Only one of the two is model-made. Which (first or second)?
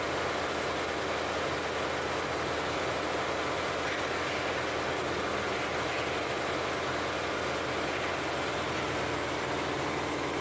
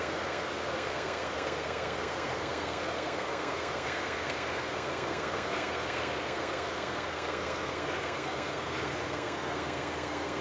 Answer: second